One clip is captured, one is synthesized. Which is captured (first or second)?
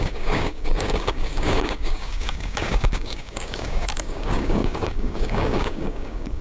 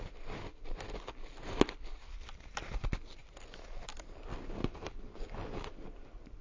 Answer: second